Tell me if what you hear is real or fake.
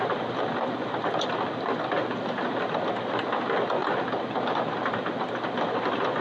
real